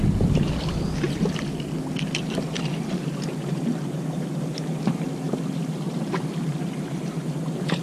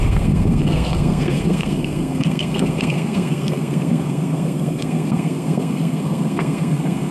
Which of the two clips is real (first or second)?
first